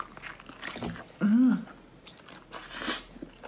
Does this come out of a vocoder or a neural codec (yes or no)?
no